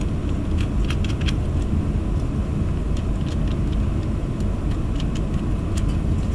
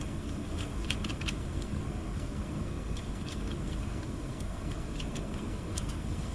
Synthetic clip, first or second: second